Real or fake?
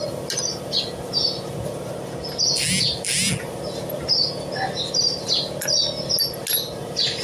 real